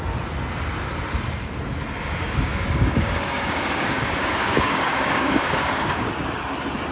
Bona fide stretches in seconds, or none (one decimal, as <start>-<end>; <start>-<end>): 0.0-2.0; 6.1-6.9